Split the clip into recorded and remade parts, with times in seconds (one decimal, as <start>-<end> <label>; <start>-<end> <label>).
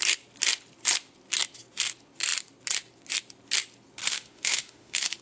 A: 0.0-4.0 recorded; 4.0-5.2 remade